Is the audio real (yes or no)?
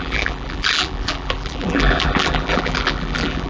no